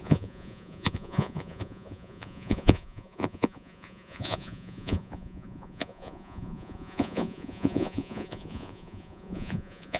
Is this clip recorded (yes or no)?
no